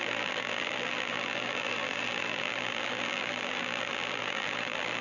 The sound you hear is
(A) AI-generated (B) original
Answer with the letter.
A